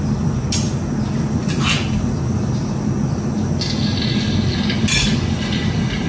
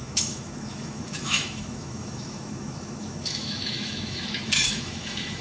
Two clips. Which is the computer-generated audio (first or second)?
second